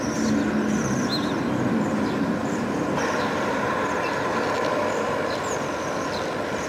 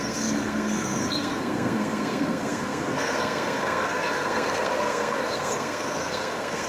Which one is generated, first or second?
second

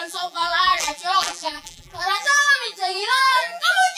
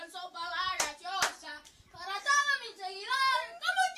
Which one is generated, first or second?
first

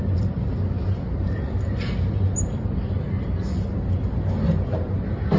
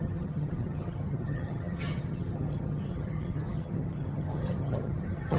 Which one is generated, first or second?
second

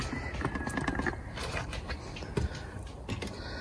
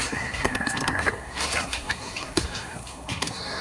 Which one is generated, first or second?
second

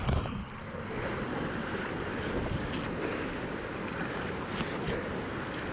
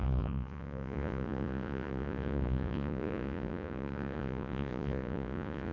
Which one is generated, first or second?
second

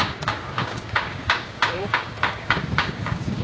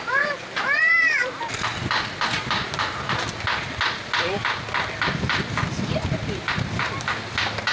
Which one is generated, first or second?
first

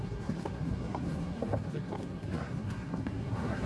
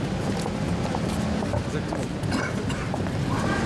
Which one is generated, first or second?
first